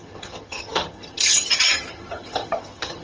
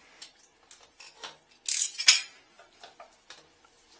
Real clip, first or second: second